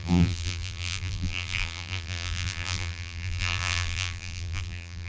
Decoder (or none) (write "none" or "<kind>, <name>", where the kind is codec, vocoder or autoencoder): vocoder, BigVGAN v2